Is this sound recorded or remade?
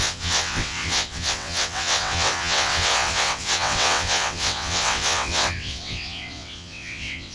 remade